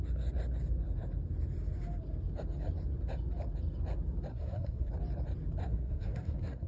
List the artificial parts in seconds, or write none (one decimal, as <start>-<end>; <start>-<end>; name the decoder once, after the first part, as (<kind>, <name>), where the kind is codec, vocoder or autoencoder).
4.3-4.9 (codec, SNAC); 5.6-6.7